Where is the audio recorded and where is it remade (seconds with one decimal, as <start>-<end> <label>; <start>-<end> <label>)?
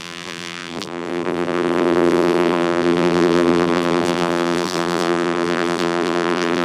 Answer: 0.0-6.6 remade